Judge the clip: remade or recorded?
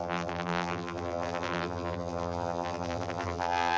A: remade